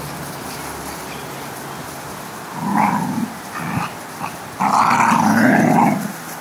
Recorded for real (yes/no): yes